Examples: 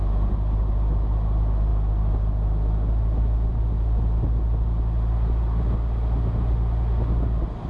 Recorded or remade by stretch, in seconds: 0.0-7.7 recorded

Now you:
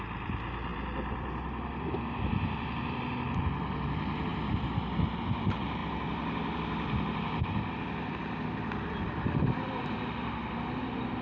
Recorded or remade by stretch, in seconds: 0.0-4.3 remade; 4.3-5.2 recorded; 5.2-11.2 remade

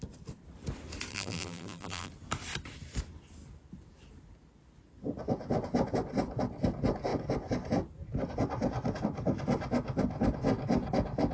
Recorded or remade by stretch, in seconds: 0.0-1.1 recorded; 1.1-2.1 remade; 2.1-11.3 recorded

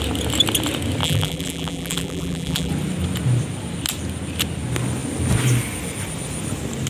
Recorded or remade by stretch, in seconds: 0.0-1.0 recorded; 1.0-2.7 remade; 2.7-6.9 recorded

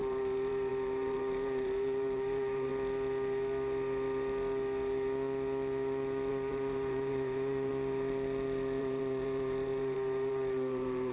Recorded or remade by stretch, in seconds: 0.0-2.7 remade; 2.7-6.3 recorded; 6.3-7.7 remade; 7.7-8.8 recorded; 8.8-11.1 remade

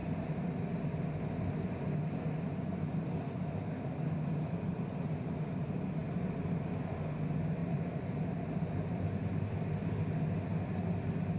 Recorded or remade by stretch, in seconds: 0.0-7.6 recorded; 7.6-9.9 remade; 9.9-11.4 recorded

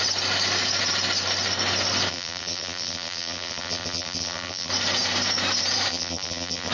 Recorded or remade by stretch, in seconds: 0.0-2.1 recorded; 2.1-4.7 remade; 4.7-5.9 recorded; 5.9-6.7 remade

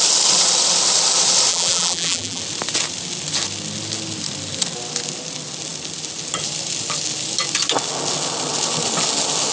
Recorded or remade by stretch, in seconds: 0.0-1.5 recorded; 1.5-2.4 remade; 2.4-9.5 recorded